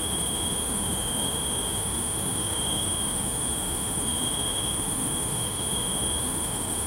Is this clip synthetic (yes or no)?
yes